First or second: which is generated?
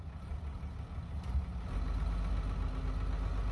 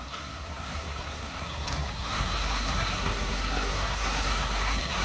second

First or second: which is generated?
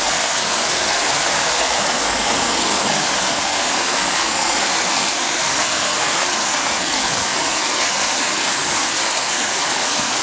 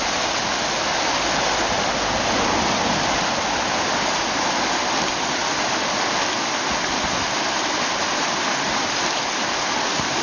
first